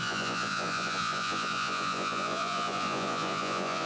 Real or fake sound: fake